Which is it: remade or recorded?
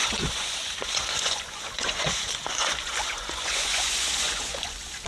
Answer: remade